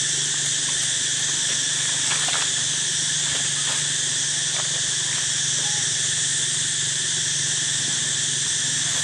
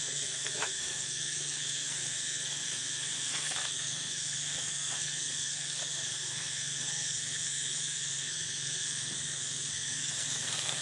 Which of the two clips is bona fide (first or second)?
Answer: first